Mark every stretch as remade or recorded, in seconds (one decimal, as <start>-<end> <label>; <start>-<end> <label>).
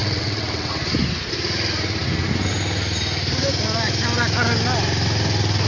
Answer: 0.0-0.7 remade; 0.7-5.7 recorded